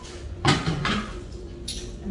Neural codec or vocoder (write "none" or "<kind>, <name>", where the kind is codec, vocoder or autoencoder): vocoder, Vocos